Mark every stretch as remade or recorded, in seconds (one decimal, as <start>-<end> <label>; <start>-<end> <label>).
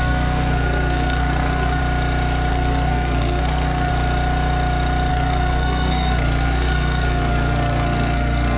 0.0-1.8 remade; 1.8-2.5 recorded; 2.5-3.9 remade; 3.9-5.1 recorded; 5.1-8.6 remade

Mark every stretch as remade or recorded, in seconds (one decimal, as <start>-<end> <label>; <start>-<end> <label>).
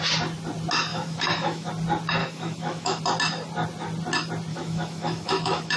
0.0-0.9 recorded; 0.9-1.7 remade; 1.7-2.2 recorded; 2.2-3.0 remade; 3.0-4.5 recorded; 4.5-5.8 remade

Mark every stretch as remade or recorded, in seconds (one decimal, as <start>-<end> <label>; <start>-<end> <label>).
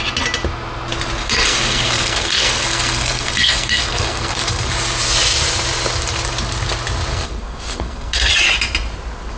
0.0-1.2 recorded; 1.2-4.7 remade; 4.7-7.1 recorded; 7.1-8.3 remade; 8.3-9.4 recorded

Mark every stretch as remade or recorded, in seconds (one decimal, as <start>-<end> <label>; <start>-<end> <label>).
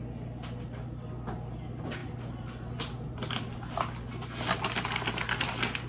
0.0-5.9 recorded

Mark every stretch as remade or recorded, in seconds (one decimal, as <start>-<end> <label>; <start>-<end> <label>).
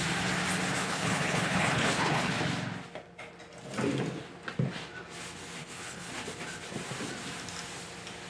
0.0-0.8 recorded; 0.8-2.3 remade; 2.3-5.6 recorded; 5.6-6.1 remade; 6.1-8.3 recorded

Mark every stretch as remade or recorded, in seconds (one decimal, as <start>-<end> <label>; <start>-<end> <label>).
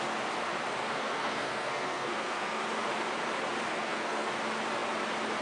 0.0-0.8 recorded; 0.8-2.6 remade; 2.6-3.7 recorded; 3.7-4.3 remade; 4.3-5.4 recorded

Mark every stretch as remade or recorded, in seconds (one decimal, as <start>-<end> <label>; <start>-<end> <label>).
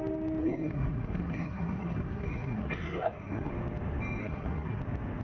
0.0-0.4 recorded; 0.4-3.5 remade; 3.5-4.2 recorded; 4.2-4.8 remade; 4.8-5.2 recorded